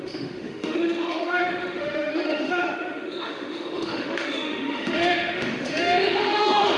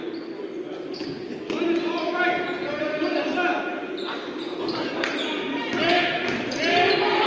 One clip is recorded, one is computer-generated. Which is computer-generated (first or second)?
first